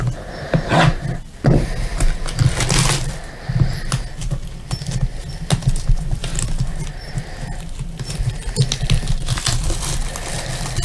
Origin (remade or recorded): recorded